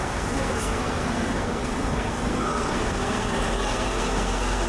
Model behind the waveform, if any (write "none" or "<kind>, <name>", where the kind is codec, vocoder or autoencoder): codec, SNAC